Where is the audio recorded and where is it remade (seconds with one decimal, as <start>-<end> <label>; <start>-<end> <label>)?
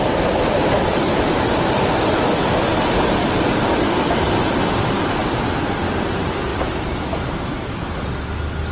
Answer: 0.0-2.7 remade; 2.7-3.6 recorded; 3.6-5.2 remade; 5.2-6.0 recorded; 6.0-6.5 remade; 6.5-7.1 recorded; 7.1-8.7 remade